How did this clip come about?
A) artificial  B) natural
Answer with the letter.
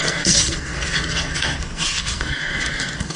A